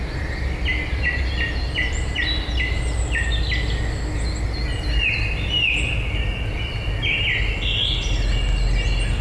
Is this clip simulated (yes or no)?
no